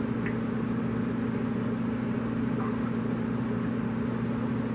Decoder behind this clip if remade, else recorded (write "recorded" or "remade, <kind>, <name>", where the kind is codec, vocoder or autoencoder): recorded